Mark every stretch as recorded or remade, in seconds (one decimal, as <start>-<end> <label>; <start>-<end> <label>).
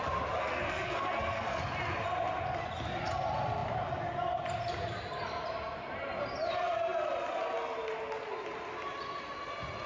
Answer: 0.0-0.4 recorded; 0.4-1.6 remade; 1.6-9.9 recorded